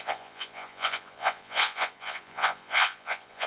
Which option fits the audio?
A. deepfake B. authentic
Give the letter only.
A